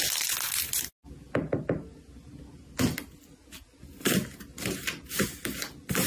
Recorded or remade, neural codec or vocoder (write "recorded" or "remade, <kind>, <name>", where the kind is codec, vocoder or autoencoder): recorded